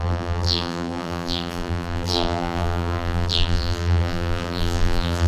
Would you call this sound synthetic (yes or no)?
yes